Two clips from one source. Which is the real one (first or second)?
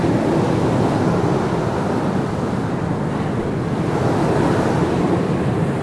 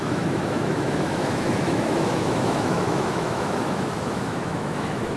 first